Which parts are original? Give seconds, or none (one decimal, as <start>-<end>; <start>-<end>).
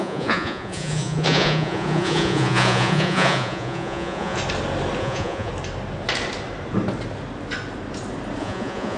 4.4-5.0; 5.5-8.4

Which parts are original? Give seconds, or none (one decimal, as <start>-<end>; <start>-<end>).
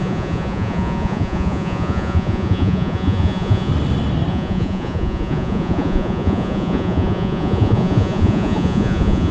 3.7-4.3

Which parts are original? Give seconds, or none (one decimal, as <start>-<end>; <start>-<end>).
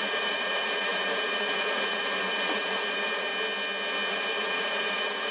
3.3-4.1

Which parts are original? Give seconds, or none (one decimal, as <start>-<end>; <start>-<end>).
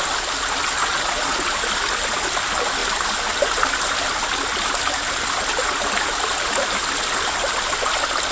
0.0-0.8; 1.7-8.3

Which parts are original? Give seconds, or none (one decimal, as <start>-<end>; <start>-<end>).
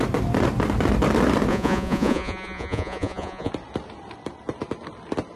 0.0-1.5; 3.5-5.4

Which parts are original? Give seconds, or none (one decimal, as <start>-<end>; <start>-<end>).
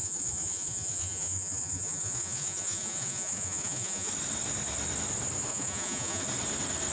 4.1-5.5; 6.2-6.9